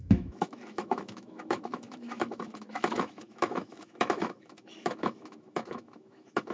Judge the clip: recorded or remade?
remade